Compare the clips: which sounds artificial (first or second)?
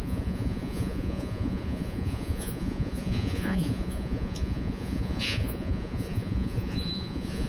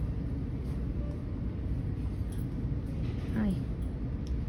first